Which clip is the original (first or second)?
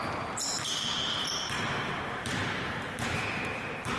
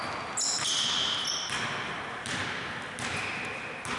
second